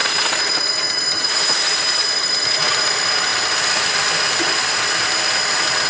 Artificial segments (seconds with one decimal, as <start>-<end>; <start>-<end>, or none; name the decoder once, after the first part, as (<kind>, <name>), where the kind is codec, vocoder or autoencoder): none